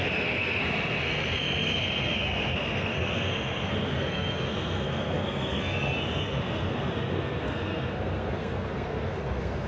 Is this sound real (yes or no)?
no